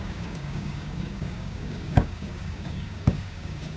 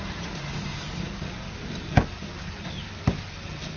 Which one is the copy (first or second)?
first